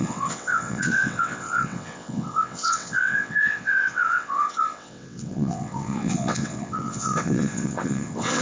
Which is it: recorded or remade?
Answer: remade